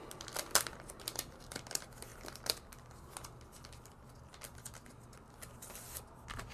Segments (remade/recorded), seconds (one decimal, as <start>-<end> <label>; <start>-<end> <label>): 0.0-6.5 recorded